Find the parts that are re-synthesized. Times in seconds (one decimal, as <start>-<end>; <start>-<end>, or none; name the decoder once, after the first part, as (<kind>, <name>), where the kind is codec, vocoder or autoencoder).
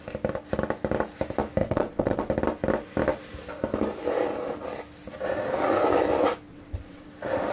1.6-2.3 (vocoder, WaveNeXt); 6.5-7.1